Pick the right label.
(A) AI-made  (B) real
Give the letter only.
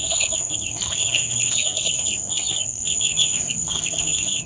A